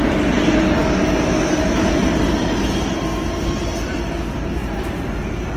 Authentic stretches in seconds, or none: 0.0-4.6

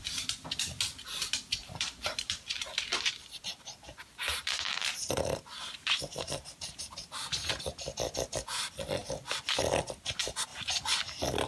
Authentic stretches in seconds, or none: 0.0-1.6; 3.1-4.3; 7.5-10.5; 11.0-11.5

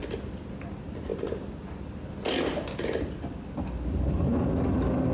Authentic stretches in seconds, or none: 0.0-5.1

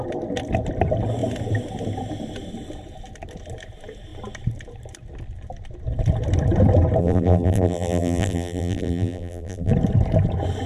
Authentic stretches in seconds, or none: 0.0-7.0; 9.7-10.7

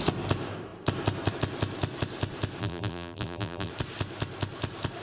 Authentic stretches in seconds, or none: 0.0-2.6; 3.7-5.0

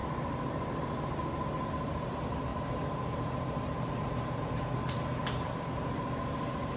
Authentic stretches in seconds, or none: 0.0-2.5; 4.5-6.8

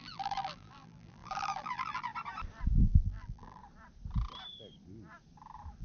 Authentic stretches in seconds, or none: 2.1-2.8; 3.6-5.8